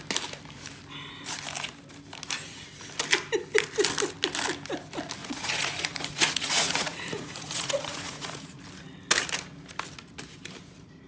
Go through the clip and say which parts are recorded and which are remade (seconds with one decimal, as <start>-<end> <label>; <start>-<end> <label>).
0.0-5.2 recorded; 5.2-8.6 remade; 8.6-11.1 recorded